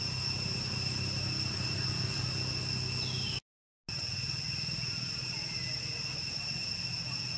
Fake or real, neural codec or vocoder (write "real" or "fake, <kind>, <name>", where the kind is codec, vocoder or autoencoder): real